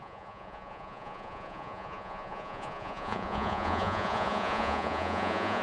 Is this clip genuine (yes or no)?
no